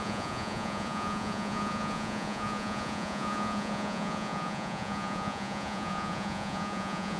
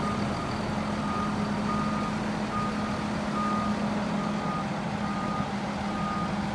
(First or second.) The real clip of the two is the second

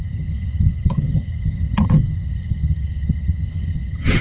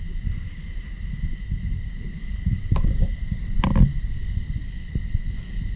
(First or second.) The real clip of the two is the second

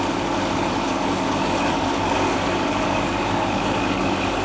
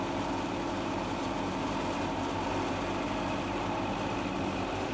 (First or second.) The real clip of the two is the second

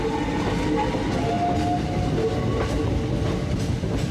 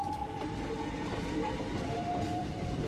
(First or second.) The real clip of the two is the first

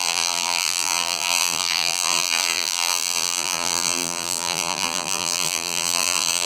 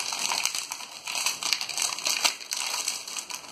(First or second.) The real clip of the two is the second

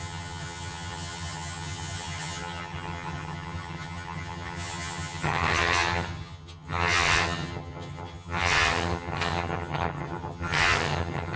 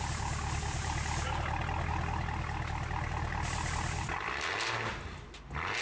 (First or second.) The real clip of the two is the second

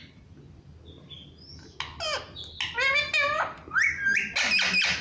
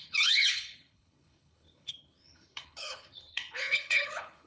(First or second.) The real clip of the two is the first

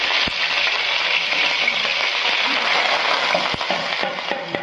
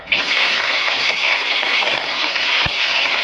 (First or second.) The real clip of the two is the first